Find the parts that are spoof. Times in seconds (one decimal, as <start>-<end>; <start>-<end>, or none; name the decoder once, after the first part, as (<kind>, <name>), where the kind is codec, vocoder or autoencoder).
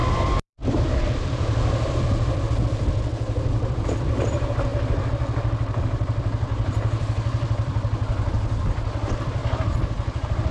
0.0-9.4 (vocoder, BigVGAN v2)